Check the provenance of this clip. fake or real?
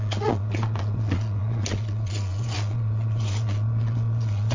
fake